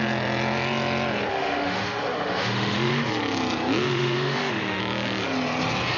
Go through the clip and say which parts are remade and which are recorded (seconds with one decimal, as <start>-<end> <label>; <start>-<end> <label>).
0.0-1.3 recorded; 1.3-3.1 remade; 3.1-3.8 recorded; 3.8-4.8 remade; 4.8-6.0 recorded